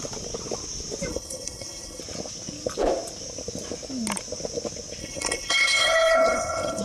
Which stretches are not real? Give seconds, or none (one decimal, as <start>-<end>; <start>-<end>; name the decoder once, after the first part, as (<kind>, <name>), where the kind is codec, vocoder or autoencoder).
1.1-2.0 (codec, HILCodec); 5.0-6.8

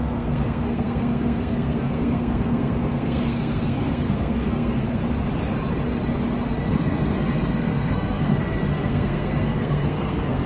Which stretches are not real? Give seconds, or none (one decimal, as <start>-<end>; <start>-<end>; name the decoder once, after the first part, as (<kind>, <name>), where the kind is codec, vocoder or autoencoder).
0.0-5.0 (codec, SNAC); 6.7-10.5